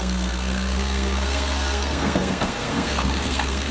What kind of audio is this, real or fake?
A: fake